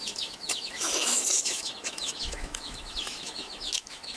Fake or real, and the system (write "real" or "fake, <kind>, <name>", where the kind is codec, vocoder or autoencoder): fake, autoencoder, DAC-VAE